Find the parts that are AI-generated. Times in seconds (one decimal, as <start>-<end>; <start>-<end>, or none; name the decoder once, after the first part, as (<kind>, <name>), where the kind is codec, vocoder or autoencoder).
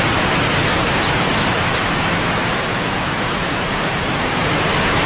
none